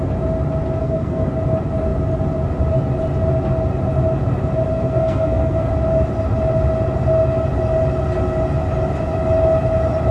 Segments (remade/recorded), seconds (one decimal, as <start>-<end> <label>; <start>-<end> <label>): 0.0-0.8 recorded; 0.8-1.3 remade; 1.3-4.7 recorded; 4.7-5.7 remade; 5.7-10.1 recorded